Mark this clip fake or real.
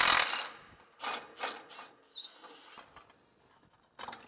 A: real